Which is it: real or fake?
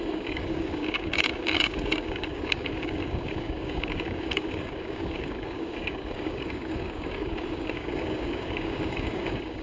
fake